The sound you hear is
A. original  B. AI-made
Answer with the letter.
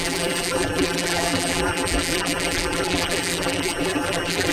B